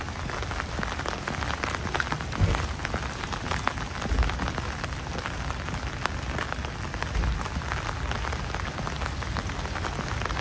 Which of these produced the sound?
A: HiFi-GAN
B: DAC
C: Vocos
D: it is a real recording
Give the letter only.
D